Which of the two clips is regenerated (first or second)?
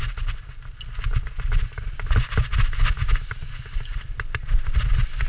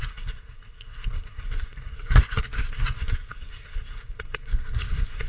second